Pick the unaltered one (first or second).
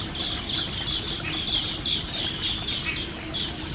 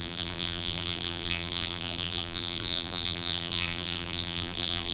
first